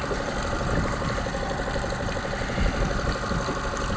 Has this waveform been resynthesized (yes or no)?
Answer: yes